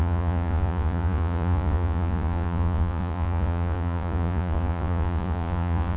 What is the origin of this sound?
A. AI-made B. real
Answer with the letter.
A